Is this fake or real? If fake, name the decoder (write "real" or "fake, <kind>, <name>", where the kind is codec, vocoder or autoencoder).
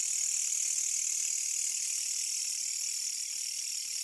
real